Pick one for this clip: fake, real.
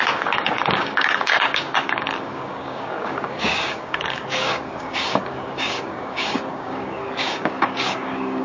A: fake